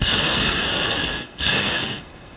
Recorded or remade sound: remade